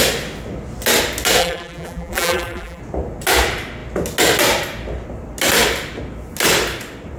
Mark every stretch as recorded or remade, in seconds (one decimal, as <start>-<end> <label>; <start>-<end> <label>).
0.0-1.4 recorded; 1.4-2.8 remade; 2.8-7.2 recorded